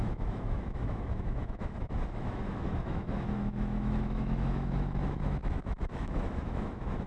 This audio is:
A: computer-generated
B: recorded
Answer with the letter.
A